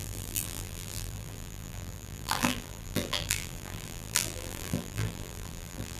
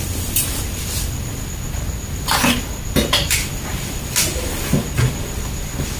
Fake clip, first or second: first